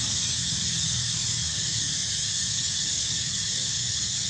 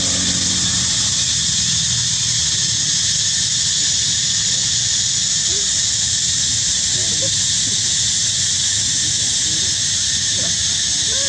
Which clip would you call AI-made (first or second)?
first